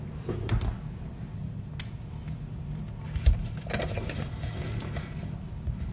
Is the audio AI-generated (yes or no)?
no